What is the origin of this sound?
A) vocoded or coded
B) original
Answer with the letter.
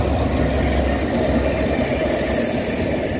B